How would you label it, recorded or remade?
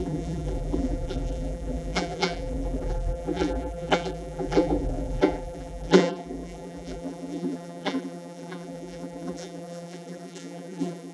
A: remade